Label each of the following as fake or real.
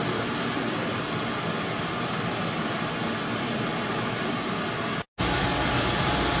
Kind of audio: real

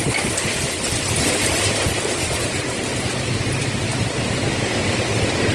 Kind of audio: real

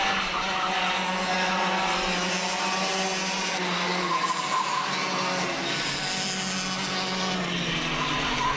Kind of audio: real